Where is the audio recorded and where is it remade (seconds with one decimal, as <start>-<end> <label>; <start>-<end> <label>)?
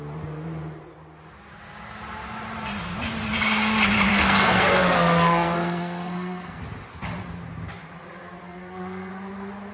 0.0-4.1 recorded; 4.1-6.6 remade; 6.6-8.4 recorded; 8.4-9.1 remade; 9.1-9.7 recorded